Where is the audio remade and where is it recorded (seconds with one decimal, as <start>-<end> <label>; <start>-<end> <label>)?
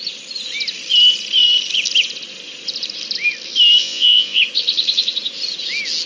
0.0-3.8 recorded; 3.8-4.4 remade; 4.4-6.1 recorded